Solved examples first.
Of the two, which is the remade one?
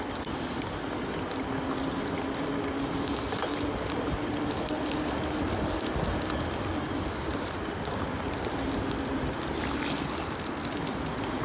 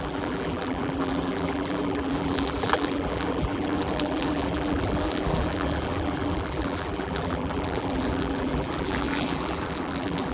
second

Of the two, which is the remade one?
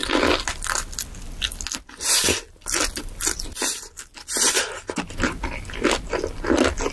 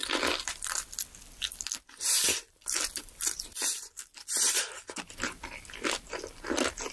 second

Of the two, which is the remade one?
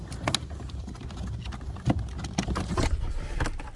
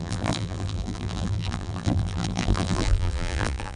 second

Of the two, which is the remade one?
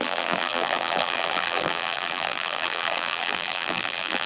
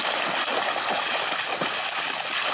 first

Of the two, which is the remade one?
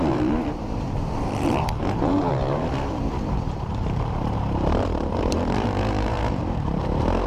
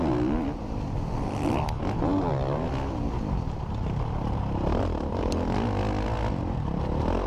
first